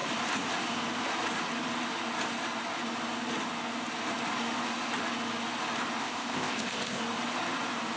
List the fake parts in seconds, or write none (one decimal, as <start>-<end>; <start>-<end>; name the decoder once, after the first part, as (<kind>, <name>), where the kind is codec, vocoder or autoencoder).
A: 6.0-7.0 (codec, ZipCodec)